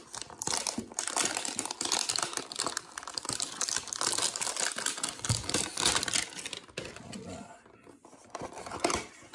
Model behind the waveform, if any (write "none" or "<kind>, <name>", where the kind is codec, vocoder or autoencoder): none